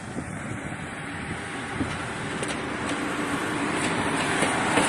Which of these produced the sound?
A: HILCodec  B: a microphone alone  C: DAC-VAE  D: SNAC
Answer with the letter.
B